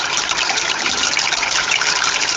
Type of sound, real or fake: fake